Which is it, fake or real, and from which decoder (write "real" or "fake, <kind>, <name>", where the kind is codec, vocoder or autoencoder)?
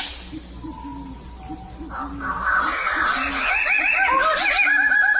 real